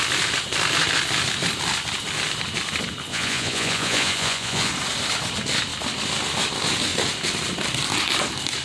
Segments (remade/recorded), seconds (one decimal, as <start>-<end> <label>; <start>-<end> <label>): 0.0-3.1 recorded; 3.1-4.7 remade; 4.7-8.6 recorded